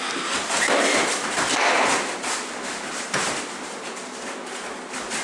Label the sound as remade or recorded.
recorded